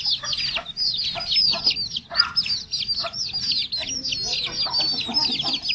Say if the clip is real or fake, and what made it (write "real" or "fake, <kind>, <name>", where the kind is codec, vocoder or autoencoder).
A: real